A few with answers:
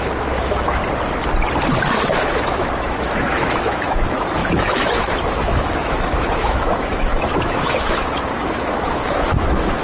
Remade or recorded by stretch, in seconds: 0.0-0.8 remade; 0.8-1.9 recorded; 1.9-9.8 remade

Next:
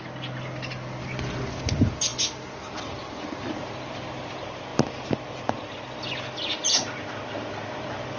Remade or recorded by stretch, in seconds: 0.0-8.2 recorded